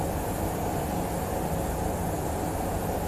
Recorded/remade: recorded